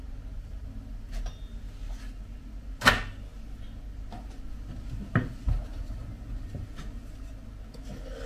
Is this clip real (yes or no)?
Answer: yes